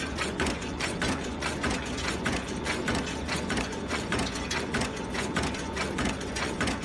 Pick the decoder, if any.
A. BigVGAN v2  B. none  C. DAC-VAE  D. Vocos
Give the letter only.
D